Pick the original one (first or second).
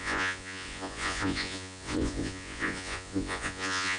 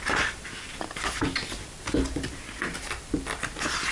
second